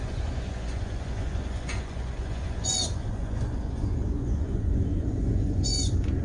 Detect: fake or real fake